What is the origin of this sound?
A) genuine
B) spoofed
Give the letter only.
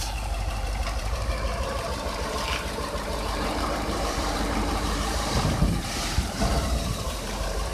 B